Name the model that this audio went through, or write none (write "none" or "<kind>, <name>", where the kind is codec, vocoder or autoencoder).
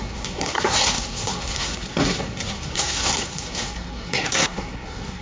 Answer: codec, SNAC